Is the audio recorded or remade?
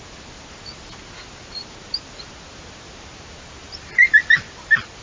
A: recorded